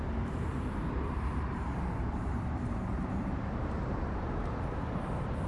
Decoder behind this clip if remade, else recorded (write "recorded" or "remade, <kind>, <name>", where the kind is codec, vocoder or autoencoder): remade, vocoder, BigVGAN v2